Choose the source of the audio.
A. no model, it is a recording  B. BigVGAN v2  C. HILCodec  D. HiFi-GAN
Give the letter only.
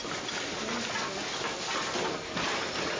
A